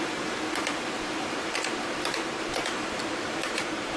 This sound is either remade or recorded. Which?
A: remade